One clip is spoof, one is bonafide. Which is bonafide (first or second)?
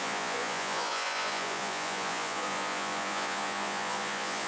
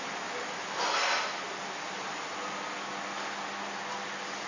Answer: second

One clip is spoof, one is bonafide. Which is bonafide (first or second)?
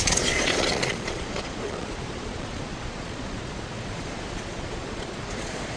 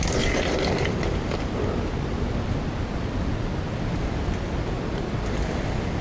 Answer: second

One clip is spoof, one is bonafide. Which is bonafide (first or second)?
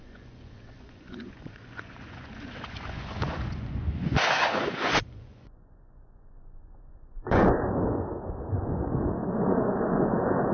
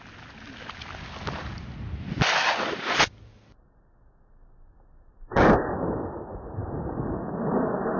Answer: second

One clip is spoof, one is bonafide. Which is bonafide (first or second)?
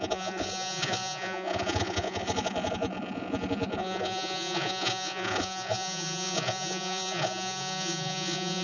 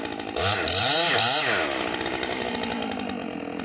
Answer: second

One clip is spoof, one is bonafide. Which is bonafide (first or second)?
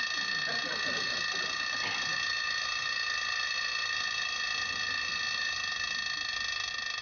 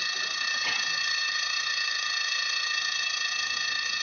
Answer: first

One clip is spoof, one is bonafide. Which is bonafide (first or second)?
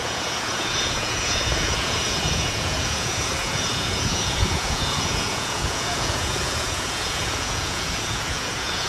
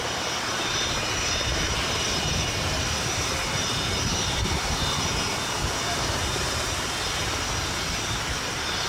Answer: second